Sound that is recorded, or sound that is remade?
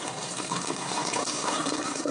remade